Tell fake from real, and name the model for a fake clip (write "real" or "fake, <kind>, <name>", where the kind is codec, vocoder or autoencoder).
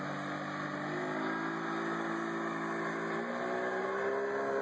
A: real